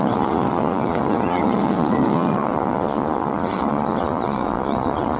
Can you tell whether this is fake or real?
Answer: fake